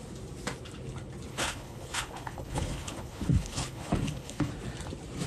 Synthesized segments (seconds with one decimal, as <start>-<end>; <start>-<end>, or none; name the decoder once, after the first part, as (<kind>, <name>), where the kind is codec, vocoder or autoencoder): 1.3-4.5 (codec, HILCodec)